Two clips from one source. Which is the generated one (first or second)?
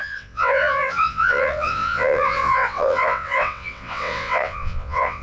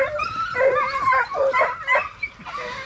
first